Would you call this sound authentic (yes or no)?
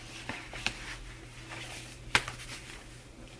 yes